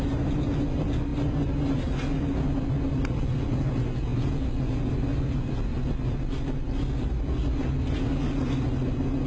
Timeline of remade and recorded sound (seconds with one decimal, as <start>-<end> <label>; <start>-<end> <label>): 0.0-9.3 recorded